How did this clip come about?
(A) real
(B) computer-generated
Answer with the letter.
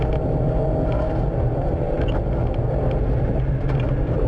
A